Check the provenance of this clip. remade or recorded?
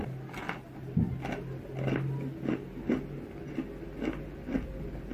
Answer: recorded